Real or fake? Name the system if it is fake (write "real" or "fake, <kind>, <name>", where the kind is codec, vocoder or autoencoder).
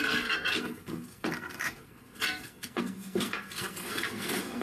fake, codec, SNAC